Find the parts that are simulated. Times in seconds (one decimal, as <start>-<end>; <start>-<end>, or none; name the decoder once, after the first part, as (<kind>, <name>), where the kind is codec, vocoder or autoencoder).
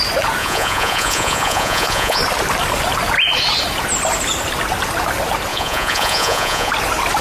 0.4-2.2 (vocoder, Vocos); 5.5-6.7